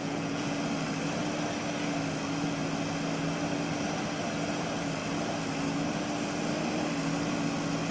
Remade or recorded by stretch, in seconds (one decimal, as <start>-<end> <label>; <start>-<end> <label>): 0.0-0.6 remade; 0.6-7.9 recorded